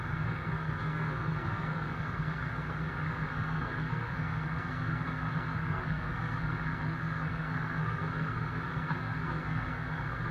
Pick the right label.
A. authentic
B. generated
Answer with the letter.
B